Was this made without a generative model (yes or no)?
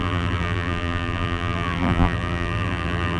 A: no